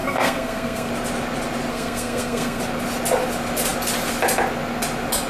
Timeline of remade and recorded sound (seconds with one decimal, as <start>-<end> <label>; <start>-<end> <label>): 0.0-0.9 remade; 0.9-1.7 recorded; 1.7-2.6 remade; 2.6-5.3 recorded